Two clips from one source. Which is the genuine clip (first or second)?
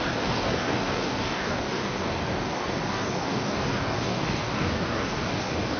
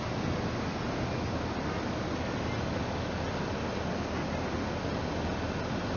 second